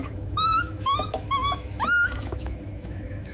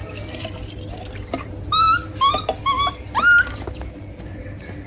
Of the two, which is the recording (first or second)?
second